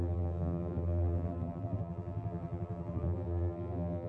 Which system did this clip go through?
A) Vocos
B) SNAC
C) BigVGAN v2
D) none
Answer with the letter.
C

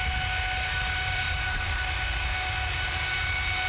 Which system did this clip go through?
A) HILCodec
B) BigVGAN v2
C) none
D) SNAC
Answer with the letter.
C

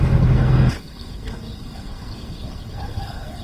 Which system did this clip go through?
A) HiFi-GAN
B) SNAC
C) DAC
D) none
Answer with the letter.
B